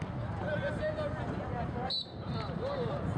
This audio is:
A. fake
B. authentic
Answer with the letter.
B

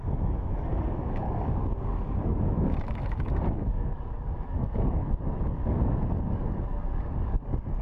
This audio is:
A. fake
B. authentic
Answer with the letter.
A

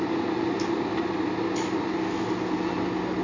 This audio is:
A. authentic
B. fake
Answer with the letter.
A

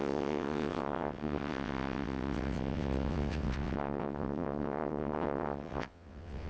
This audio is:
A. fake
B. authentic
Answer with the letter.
A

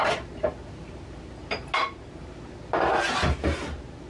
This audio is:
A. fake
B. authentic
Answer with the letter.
B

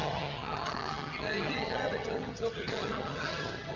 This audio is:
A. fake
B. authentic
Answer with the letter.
A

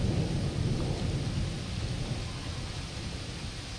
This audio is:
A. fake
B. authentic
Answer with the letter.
B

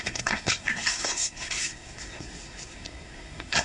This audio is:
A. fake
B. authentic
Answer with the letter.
A